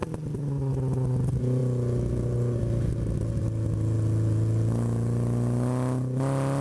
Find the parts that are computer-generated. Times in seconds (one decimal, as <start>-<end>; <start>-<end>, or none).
none